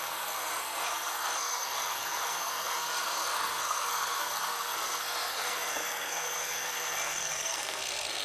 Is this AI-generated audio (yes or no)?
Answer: yes